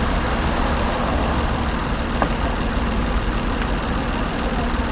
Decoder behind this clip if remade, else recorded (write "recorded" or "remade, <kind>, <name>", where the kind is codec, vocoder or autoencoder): recorded